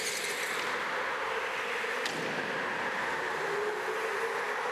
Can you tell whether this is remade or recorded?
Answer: recorded